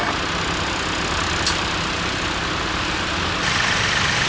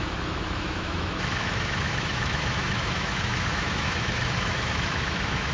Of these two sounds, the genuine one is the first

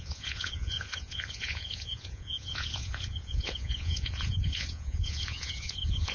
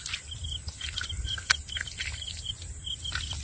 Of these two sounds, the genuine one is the second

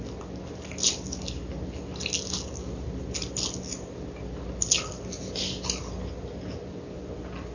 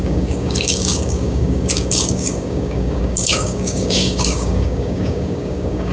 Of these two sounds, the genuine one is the first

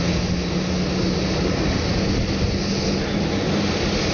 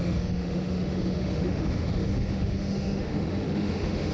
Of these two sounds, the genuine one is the first